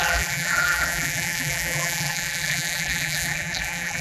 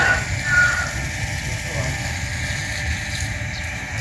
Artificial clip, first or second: first